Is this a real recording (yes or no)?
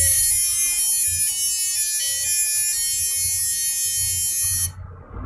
yes